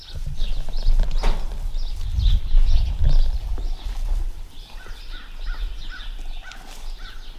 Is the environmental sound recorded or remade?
recorded